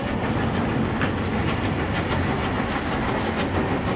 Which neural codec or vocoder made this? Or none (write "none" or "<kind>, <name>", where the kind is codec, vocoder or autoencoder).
none